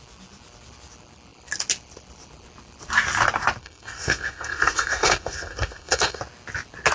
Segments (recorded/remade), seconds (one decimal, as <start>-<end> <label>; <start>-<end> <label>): 0.0-3.6 recorded; 3.6-6.2 remade; 6.2-6.9 recorded

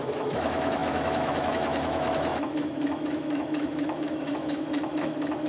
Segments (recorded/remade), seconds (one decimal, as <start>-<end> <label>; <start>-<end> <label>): 0.0-5.5 remade